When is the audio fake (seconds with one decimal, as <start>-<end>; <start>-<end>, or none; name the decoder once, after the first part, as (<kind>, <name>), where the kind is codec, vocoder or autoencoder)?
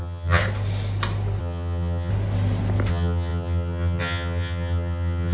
0.0-0.4 (vocoder, HiFi-GAN); 1.4-2.1; 2.9-5.3